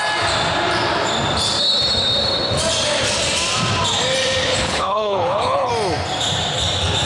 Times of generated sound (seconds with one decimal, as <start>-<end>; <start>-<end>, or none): 4.4-5.7